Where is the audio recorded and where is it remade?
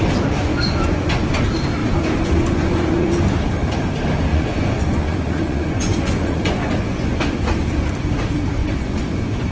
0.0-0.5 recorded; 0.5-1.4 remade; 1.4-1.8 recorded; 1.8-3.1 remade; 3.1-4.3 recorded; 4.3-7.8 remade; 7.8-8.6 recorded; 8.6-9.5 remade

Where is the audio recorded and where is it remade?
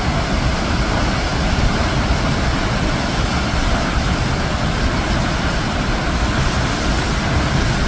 0.0-7.9 recorded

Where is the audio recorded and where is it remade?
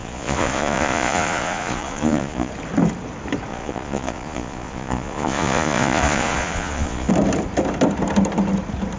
0.0-2.5 remade; 2.5-3.5 recorded; 3.5-7.1 remade; 7.1-9.0 recorded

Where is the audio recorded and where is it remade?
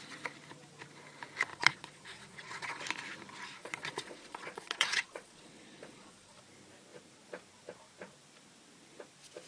0.0-1.5 recorded; 1.5-2.8 remade; 2.8-3.6 recorded; 3.6-6.4 remade; 6.4-9.5 recorded